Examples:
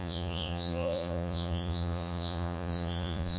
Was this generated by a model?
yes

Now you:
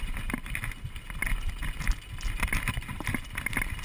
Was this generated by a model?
no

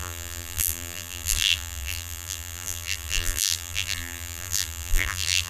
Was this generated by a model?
yes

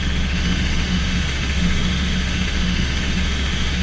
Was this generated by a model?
yes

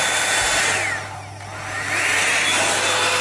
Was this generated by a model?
no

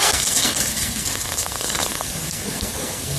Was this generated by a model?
yes